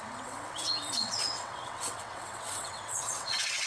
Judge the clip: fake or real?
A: fake